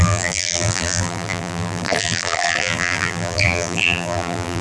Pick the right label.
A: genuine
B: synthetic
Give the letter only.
B